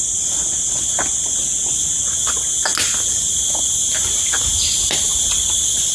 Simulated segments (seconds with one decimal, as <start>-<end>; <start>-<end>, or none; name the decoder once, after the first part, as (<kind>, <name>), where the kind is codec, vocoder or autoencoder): none